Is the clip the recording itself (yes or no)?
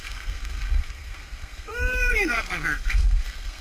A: no